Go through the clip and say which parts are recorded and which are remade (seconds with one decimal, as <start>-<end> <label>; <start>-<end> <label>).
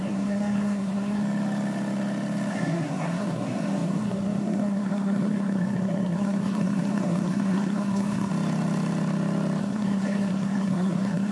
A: 0.0-1.2 remade; 1.2-2.5 recorded; 2.5-8.3 remade; 8.3-9.6 recorded; 9.6-11.3 remade